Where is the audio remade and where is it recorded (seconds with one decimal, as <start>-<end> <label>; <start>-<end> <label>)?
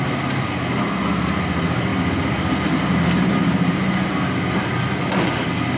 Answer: 0.0-5.8 recorded